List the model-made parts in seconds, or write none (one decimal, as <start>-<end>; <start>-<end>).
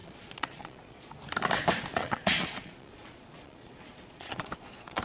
0.0-1.1; 1.9-5.0